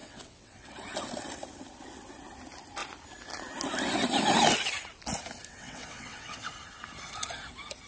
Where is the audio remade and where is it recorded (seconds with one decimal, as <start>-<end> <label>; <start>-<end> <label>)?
0.0-0.7 remade; 0.7-5.5 recorded; 5.5-6.5 remade; 6.5-7.9 recorded